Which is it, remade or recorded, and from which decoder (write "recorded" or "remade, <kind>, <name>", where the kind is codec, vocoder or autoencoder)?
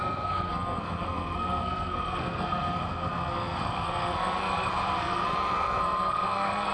remade, codec, SNAC